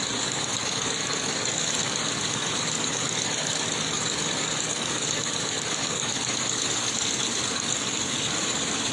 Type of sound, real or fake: fake